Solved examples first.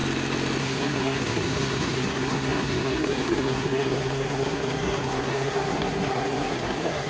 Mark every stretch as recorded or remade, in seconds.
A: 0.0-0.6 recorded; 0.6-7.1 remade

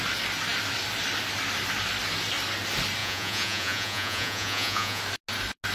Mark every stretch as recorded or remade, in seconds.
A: 0.0-3.0 recorded; 3.0-5.0 remade; 5.0-5.7 recorded

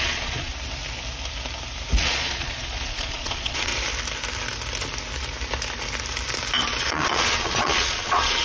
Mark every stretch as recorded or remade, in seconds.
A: 0.0-0.5 remade; 0.5-2.0 recorded; 2.0-3.7 remade; 3.7-6.8 recorded; 6.8-8.4 remade

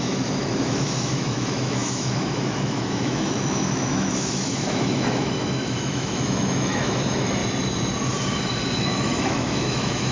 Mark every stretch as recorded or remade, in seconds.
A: 0.0-7.4 remade; 7.4-8.8 recorded; 8.8-10.1 remade

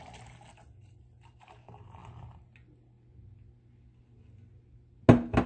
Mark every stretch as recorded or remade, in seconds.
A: 0.0-5.5 recorded

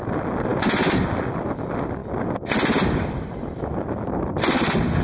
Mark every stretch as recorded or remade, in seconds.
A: 0.0-5.0 recorded

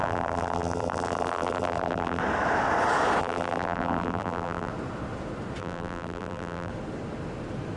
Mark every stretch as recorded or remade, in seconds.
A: 0.0-2.2 remade; 2.2-3.2 recorded; 3.2-4.7 remade; 4.7-5.6 recorded; 5.6-6.7 remade; 6.7-7.8 recorded